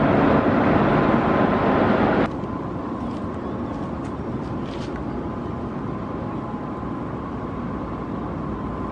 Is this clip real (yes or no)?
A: yes